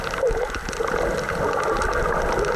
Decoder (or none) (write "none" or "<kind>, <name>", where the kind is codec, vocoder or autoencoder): none